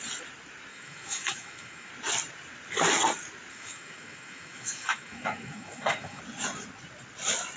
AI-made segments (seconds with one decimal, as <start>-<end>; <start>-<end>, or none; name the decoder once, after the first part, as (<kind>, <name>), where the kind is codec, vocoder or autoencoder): 0.7-1.9 (autoencoder, DAC-VAE); 3.5-6.2